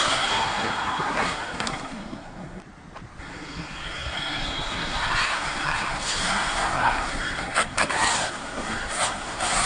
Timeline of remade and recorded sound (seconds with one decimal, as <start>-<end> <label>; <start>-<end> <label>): 0.0-2.6 remade; 2.6-3.2 recorded; 3.2-9.7 remade

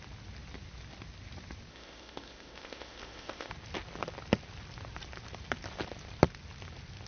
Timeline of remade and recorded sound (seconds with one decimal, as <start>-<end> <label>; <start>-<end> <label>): 0.0-1.7 recorded; 1.7-3.5 remade; 3.5-7.1 recorded